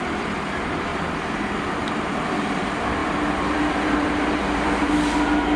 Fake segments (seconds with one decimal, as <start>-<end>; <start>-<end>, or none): 0.9-2.1; 3.0-4.9

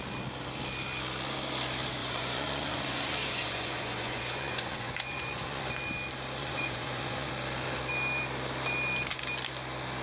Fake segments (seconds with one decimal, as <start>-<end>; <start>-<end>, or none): 2.0-5.6; 6.4-7.3

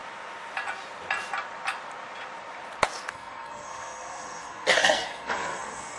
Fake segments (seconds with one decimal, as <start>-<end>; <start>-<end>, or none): 3.1-6.0

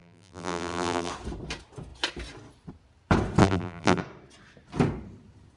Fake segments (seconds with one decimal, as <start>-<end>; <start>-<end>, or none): 0.0-1.1; 3.4-4.0